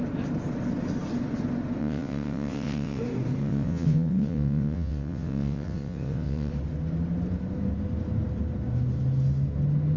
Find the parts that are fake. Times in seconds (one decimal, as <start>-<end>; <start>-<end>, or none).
1.8-3.0; 3.4-6.5